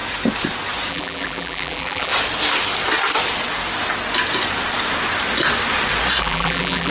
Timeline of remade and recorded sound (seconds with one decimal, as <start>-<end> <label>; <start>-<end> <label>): 0.0-0.9 recorded; 0.9-2.1 remade; 2.1-6.2 recorded; 6.2-6.9 remade